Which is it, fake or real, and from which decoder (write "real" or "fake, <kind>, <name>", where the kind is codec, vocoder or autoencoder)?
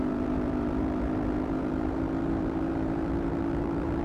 fake, vocoder, BigVGAN v2